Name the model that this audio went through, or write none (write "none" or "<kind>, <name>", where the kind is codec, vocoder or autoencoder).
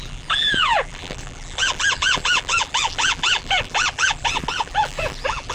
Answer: vocoder, BigVGAN v2